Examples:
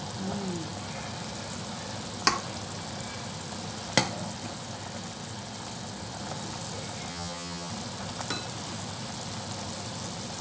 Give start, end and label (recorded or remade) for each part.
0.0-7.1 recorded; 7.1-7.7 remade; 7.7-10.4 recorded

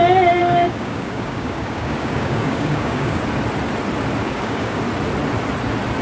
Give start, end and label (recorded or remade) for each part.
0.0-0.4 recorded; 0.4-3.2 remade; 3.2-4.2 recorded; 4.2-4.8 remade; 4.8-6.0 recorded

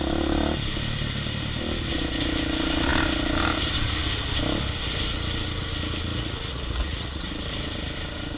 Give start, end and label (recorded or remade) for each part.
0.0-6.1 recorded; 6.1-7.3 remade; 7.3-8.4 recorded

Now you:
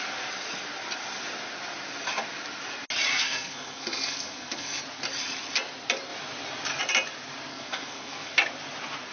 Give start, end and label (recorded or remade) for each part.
0.0-3.1 recorded; 3.1-4.8 remade; 4.8-7.5 recorded; 7.5-8.3 remade; 8.3-9.1 recorded

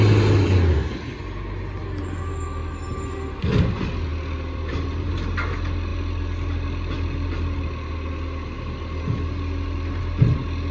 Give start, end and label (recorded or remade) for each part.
0.0-4.1 recorded; 4.1-5.1 remade; 5.1-10.7 recorded

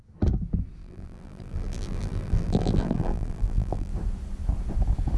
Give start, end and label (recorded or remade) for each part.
0.0-0.8 recorded; 0.8-3.9 remade; 3.9-5.2 recorded